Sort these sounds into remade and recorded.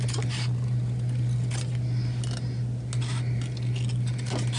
recorded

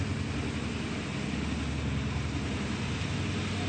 recorded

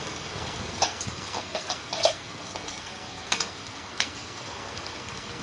remade